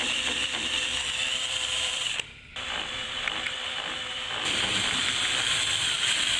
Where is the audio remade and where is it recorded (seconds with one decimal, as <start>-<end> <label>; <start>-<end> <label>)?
0.0-5.0 remade; 5.0-5.8 recorded; 5.8-6.4 remade